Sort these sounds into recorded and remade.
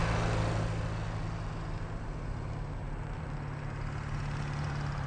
recorded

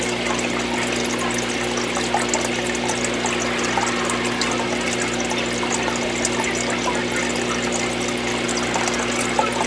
recorded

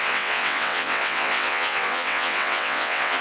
remade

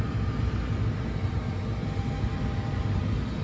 recorded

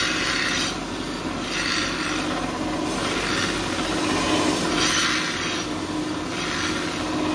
recorded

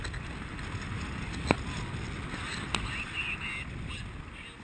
recorded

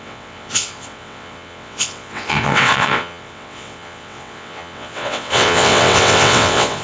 remade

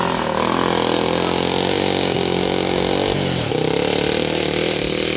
recorded